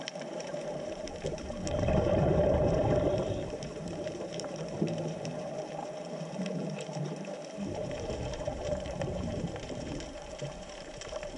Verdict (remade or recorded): remade